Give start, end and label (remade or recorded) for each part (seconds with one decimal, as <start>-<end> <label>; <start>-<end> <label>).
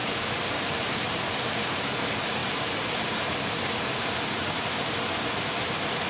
0.0-1.2 remade; 1.2-2.4 recorded; 2.4-4.9 remade; 4.9-6.1 recorded